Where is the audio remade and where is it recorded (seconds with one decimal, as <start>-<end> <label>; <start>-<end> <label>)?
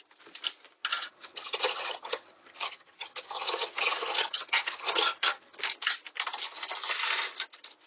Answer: 0.0-0.9 recorded; 0.9-5.6 remade; 5.6-7.9 recorded